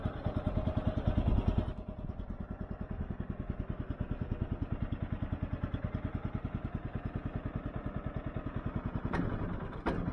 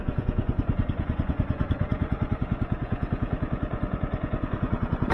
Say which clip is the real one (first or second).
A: first